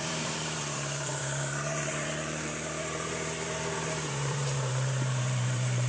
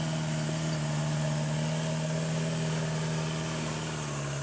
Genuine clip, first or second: second